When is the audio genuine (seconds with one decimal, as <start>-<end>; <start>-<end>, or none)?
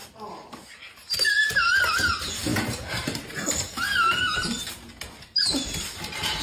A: 1.9-6.4